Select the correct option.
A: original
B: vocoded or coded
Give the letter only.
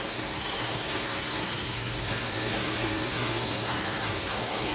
B